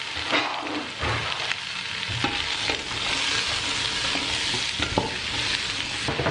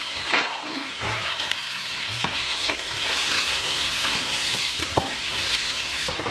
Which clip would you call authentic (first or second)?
first